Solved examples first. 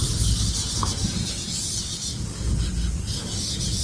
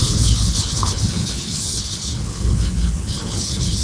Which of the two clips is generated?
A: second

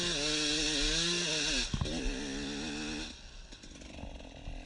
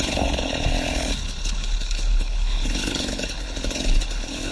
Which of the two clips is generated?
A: second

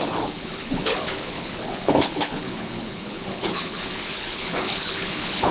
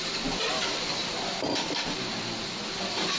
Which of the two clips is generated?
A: first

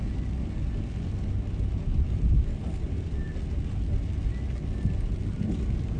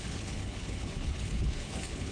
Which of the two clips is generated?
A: second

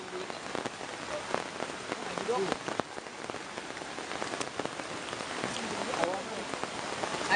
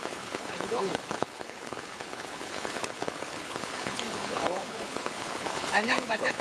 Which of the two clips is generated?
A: second